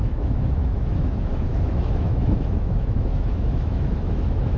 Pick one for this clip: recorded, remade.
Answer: remade